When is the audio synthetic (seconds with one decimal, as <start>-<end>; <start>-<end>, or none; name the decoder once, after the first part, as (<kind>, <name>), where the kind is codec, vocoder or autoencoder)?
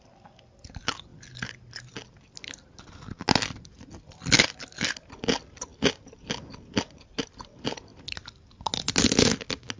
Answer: none